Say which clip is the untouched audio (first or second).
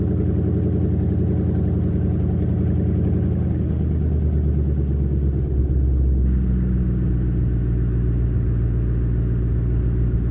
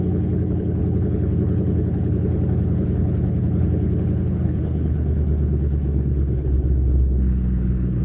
first